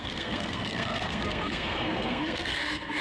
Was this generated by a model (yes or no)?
yes